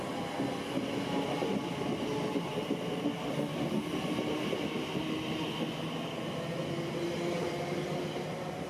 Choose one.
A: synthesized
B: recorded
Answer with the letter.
B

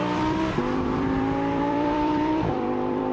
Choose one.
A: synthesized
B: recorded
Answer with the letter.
A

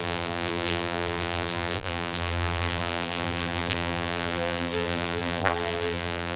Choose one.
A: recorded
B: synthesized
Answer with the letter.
B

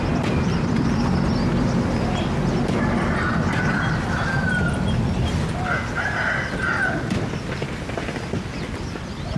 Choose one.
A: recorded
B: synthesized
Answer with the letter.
A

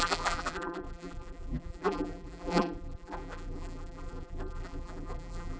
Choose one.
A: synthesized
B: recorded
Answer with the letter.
A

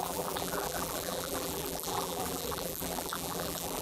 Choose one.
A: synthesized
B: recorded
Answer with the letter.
A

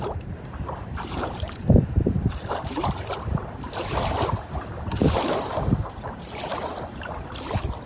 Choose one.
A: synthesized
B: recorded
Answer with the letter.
A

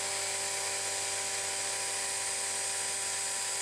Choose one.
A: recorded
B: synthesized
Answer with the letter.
A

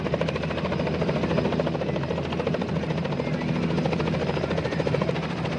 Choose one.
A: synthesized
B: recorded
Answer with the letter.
B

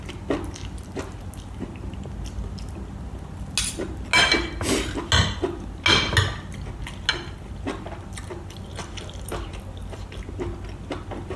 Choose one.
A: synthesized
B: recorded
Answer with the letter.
B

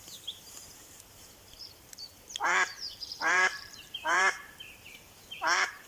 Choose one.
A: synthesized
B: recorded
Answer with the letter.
A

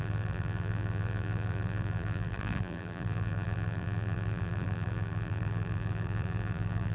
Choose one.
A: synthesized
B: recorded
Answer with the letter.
A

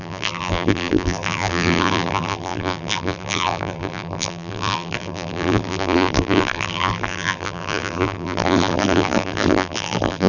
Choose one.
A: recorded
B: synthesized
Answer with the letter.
B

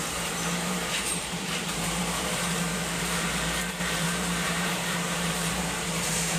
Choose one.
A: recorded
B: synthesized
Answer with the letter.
B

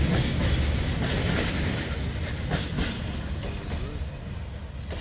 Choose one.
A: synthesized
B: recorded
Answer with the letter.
B